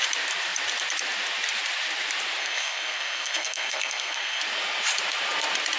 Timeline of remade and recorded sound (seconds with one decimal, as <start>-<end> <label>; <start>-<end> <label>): 0.0-2.4 recorded; 2.4-4.4 remade; 4.4-5.8 recorded